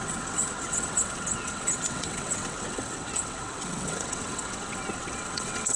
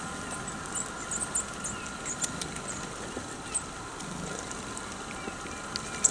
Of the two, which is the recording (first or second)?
second